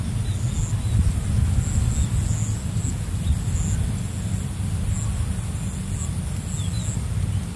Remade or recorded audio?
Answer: recorded